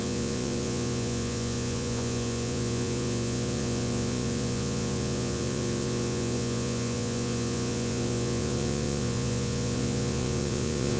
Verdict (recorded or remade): remade